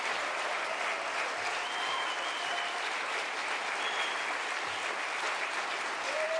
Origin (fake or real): real